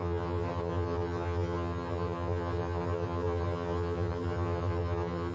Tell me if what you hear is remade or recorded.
remade